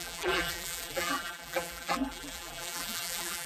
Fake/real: fake